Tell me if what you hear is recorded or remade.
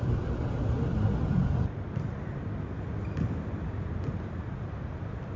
remade